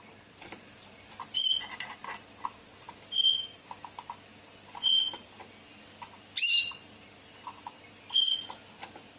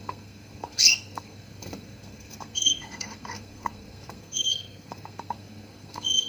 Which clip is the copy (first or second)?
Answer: second